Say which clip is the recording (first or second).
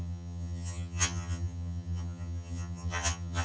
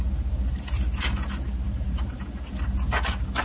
second